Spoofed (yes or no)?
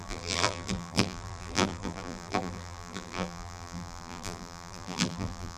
yes